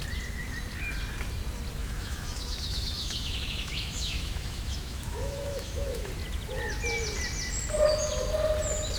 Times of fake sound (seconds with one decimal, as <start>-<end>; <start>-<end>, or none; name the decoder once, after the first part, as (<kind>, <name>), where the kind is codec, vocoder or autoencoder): 1.8-6.1 (autoencoder, DAC-VAE)

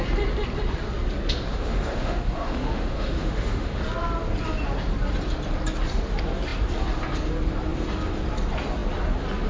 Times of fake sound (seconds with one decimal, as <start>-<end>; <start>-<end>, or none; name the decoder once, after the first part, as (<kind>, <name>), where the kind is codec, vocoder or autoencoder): 1.5-3.8 (autoencoder, DAC-VAE)

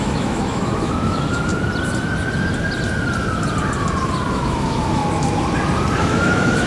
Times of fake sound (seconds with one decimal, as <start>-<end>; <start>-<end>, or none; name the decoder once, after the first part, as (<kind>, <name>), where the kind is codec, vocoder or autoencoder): 0.0-1.5 (autoencoder, DAC-VAE); 4.3-5.0; 6.0-6.7

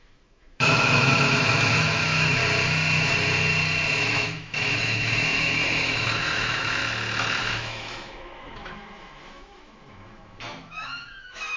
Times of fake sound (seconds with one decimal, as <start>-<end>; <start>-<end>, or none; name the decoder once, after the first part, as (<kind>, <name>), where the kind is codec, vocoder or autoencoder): 0.0-2.4 (autoencoder, DAC-VAE); 4.0-6.8; 7.4-11.6